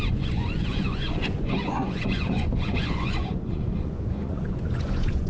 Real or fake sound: fake